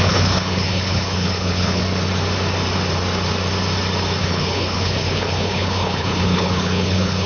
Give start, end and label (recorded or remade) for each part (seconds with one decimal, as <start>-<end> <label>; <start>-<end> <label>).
0.0-1.8 remade; 1.8-4.2 recorded; 4.2-7.3 remade